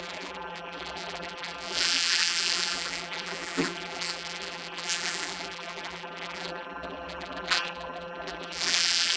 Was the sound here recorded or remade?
remade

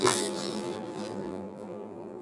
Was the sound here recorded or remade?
remade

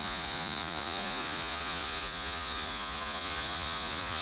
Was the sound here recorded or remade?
remade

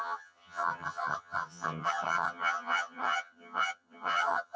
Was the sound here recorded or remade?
remade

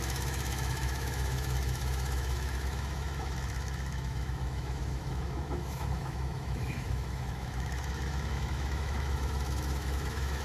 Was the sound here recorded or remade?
remade